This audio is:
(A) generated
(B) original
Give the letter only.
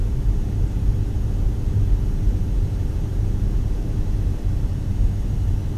A